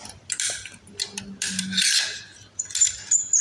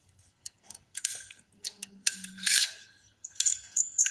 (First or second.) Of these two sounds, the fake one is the second